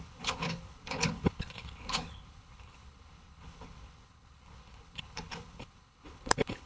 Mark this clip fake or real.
fake